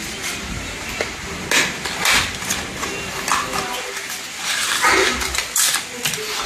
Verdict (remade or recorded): recorded